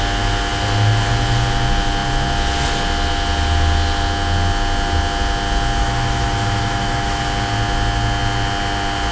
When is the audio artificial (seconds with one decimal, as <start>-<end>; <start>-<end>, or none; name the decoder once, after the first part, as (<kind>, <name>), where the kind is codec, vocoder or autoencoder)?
5.8-7.2 (autoencoder, DAC-VAE)